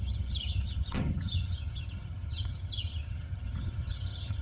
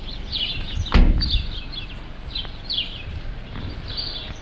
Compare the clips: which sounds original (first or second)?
second